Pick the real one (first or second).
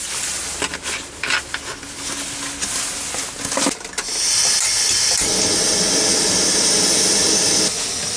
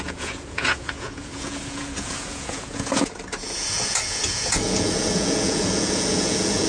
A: first